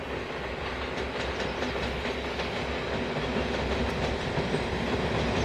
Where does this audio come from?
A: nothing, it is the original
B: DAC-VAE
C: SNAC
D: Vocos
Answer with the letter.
A